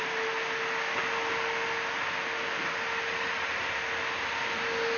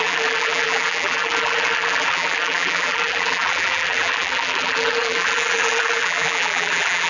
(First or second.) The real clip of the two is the first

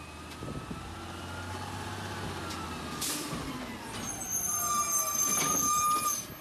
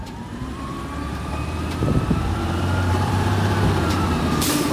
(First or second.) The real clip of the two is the first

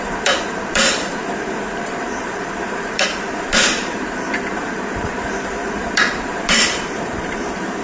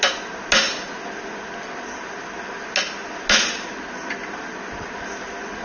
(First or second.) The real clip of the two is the second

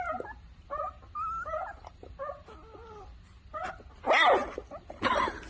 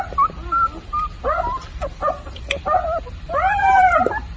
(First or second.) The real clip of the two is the first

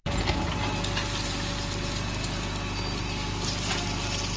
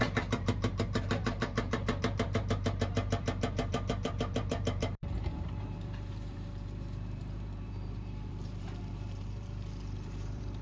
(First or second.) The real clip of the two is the first